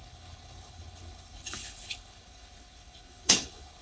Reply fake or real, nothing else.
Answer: fake